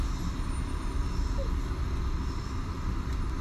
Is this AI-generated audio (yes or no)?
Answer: no